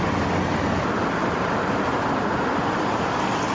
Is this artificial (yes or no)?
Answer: no